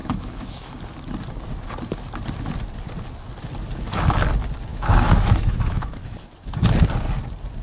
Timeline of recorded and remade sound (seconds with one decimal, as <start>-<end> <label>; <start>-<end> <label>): 0.0-0.7 remade; 0.7-4.7 recorded; 4.7-6.5 remade; 6.5-7.6 recorded